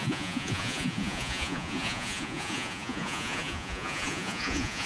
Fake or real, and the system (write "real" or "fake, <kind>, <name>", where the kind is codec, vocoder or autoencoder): fake, vocoder, Vocos